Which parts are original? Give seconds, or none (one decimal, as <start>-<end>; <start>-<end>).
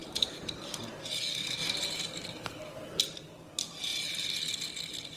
0.8-1.6; 3.0-5.2